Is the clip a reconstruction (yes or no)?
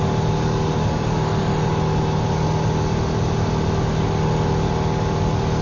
no